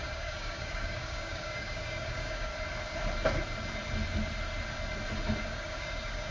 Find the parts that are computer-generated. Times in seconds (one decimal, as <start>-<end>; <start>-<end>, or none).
0.0-2.5; 5.4-6.3